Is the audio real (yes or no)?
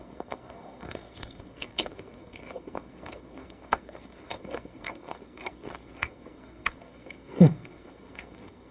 no